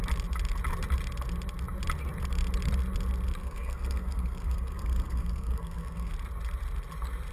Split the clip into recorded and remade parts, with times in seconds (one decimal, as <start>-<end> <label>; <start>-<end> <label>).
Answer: 0.0-3.4 recorded; 3.4-6.1 remade; 6.1-7.3 recorded